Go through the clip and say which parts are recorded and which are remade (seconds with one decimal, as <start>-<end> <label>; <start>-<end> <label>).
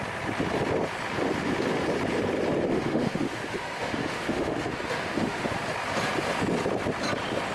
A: 0.0-2.7 recorded; 2.7-5.5 remade; 5.5-7.5 recorded